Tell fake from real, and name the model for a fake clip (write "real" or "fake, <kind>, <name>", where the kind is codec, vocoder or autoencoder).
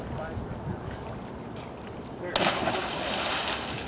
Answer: real